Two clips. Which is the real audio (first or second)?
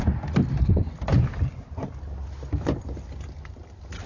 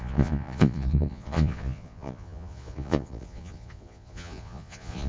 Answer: first